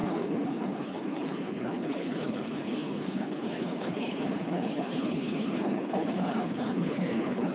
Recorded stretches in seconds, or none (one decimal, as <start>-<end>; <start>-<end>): none